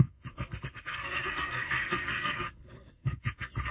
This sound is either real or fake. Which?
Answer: fake